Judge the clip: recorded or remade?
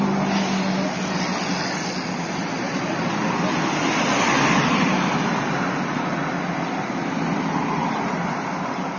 recorded